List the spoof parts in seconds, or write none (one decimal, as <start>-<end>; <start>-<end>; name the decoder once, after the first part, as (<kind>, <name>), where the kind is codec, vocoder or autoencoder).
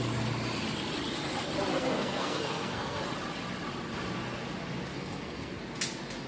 1.7-3.0 (codec, SNAC); 4.9-5.6